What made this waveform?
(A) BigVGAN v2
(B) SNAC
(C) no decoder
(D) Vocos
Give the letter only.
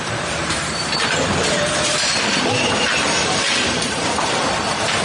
A